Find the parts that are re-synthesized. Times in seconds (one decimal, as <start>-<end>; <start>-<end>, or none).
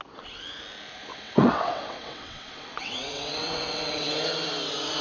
1.1-4.1